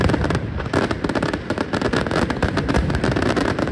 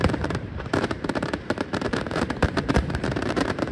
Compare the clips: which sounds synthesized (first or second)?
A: second